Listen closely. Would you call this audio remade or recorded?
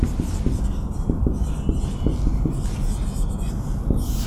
recorded